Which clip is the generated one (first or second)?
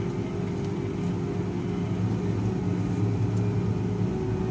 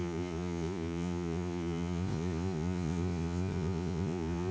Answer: second